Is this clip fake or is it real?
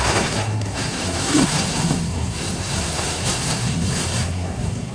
fake